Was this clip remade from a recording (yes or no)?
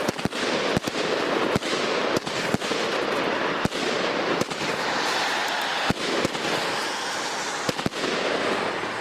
no